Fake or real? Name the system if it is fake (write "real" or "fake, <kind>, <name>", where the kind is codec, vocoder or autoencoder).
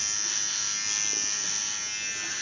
real